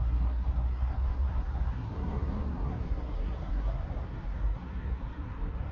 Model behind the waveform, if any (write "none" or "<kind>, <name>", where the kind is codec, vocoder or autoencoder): codec, SNAC